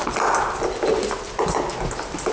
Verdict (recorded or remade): recorded